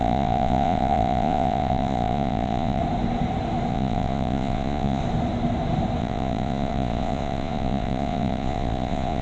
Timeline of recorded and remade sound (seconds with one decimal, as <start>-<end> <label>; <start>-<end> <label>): 0.0-2.8 remade; 2.8-3.7 recorded; 3.7-5.0 remade; 5.0-6.0 recorded; 6.0-9.2 remade